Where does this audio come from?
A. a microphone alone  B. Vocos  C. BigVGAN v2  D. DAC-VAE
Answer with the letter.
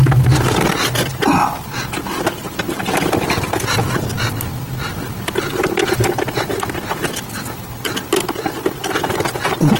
A